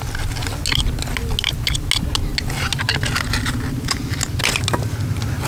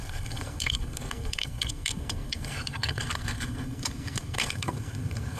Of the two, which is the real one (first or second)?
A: first